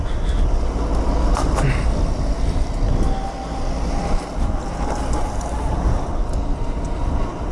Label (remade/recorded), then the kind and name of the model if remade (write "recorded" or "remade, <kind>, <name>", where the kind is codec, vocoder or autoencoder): recorded